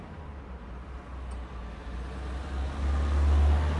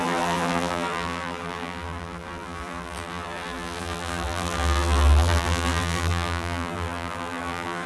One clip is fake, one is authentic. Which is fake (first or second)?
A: second